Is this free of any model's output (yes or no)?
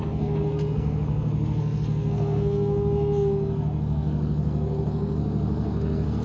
no